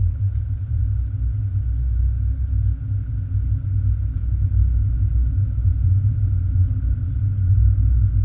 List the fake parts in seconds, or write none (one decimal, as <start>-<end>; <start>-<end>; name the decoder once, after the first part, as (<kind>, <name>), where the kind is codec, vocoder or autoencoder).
0.0-0.8 (vocoder, BigVGAN v2); 5.6-7.5